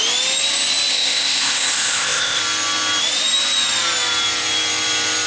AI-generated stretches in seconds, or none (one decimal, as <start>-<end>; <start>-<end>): 0.9-2.4